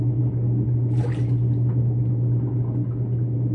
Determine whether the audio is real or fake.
real